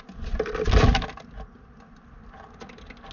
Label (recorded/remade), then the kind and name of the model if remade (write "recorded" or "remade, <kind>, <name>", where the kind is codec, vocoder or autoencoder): recorded